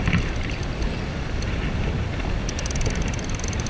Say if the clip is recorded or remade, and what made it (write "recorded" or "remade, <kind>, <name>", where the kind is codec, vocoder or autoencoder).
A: remade, vocoder, BigVGAN v2